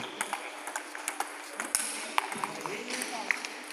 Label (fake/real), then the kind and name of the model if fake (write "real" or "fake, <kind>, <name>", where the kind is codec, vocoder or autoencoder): real